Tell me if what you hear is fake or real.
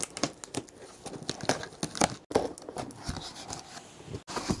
real